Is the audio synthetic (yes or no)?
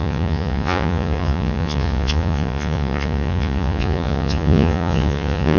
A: yes